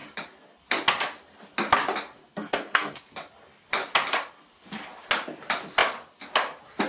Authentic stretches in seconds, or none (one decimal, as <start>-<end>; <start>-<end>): 0.0-2.2; 3.0-6.9